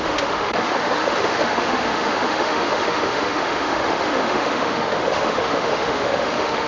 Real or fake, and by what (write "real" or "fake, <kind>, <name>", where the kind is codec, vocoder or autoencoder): fake, autoencoder, DAC-VAE